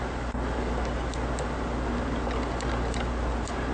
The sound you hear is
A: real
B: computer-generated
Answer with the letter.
A